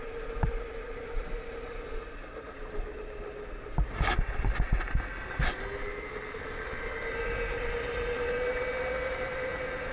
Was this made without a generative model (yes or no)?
yes